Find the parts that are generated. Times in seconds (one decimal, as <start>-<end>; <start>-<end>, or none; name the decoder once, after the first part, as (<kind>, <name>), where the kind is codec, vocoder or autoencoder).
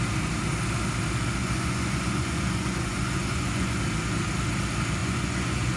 1.4-3.8 (vocoder, Vocos); 5.0-5.8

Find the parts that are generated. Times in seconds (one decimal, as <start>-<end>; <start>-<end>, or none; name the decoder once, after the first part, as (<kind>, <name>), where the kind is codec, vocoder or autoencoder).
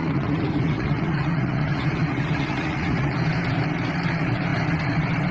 0.0-3.2 (vocoder, Vocos)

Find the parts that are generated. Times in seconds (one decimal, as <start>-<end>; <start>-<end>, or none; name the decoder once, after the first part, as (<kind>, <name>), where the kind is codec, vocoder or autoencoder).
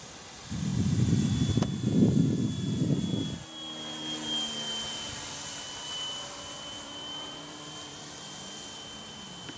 0.0-0.7 (vocoder, BigVGAN v2); 5.3-9.6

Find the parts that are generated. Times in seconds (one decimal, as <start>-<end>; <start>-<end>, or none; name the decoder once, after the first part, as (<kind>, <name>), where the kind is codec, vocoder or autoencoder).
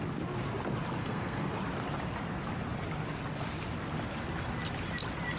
1.0-1.5 (codec, SNAC)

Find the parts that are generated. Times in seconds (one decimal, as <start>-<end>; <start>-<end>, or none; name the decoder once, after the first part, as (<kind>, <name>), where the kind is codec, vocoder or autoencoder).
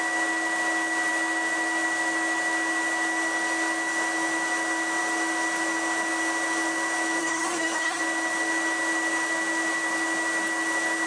7.2-8.0 (codec, SNAC)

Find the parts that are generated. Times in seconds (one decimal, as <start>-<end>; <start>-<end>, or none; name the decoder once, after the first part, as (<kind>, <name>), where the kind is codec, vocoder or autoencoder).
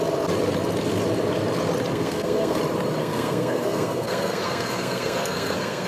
1.9-2.6 (codec, SNAC); 3.0-5.9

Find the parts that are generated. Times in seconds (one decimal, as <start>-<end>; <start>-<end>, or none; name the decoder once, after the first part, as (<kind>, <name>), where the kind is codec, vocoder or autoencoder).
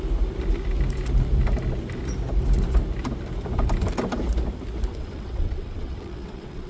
4.9-6.7 (vocoder, WaveNeXt)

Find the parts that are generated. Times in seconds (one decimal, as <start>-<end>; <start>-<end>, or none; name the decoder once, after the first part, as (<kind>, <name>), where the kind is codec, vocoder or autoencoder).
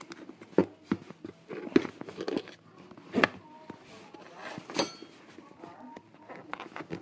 none